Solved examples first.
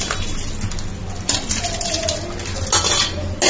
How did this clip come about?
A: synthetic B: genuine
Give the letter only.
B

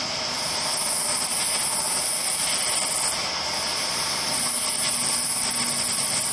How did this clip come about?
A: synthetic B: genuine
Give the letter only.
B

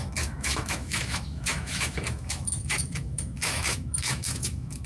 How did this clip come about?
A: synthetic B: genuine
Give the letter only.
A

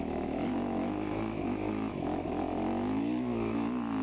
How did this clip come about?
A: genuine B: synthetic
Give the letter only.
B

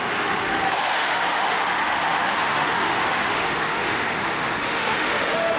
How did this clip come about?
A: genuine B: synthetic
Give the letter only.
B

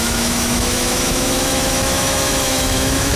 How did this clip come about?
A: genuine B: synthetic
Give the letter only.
B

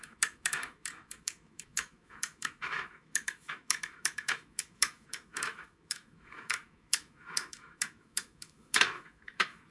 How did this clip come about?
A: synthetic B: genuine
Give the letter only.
A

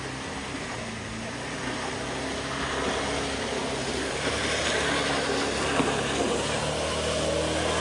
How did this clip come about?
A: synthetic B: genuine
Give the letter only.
B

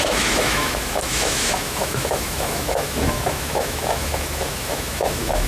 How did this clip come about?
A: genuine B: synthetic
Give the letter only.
B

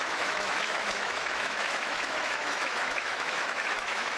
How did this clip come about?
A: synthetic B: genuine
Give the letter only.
A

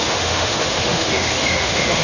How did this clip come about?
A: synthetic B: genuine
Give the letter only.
A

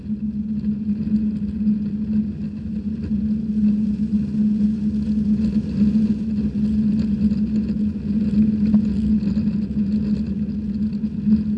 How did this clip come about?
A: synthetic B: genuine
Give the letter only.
B